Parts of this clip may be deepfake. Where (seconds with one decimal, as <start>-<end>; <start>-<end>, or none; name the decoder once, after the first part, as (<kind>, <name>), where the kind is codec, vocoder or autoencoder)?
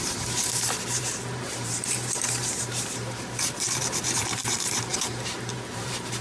0.0-6.2 (vocoder, BigVGAN v2)